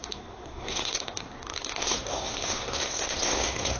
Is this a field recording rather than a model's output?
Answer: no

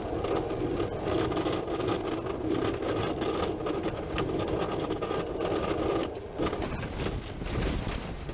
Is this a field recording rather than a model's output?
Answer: yes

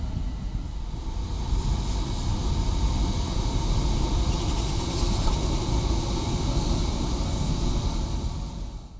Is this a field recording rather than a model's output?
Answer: yes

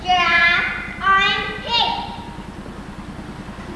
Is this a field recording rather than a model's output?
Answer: yes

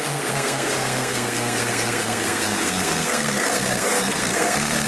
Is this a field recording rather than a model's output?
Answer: no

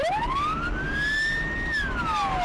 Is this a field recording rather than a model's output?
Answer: yes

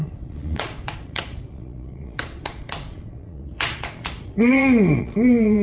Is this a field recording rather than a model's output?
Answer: no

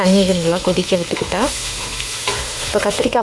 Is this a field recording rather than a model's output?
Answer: no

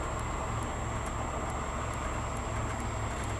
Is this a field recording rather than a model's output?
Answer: yes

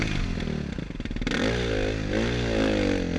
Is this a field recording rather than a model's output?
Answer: yes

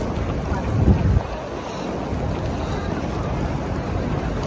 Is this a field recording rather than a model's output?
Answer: yes